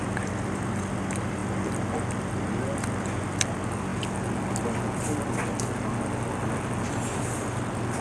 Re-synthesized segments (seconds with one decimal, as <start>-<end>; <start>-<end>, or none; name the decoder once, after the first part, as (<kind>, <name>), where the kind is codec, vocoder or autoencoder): none